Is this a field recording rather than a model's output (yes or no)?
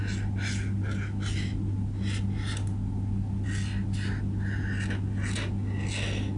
yes